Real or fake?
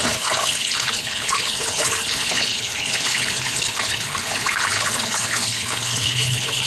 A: fake